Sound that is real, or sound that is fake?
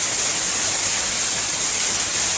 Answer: real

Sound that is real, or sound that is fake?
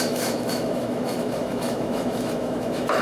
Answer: fake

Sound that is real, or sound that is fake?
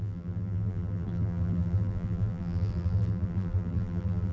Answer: fake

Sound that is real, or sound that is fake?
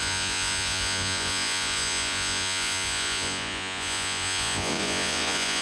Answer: fake